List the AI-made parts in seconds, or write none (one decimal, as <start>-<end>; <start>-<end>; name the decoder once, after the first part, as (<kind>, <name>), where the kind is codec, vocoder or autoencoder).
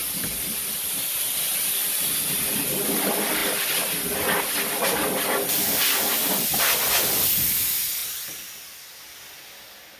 none